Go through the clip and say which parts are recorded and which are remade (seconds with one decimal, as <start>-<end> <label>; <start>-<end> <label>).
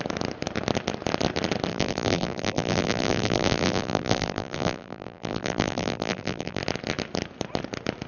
0.0-1.7 recorded; 1.7-6.6 remade; 6.6-8.1 recorded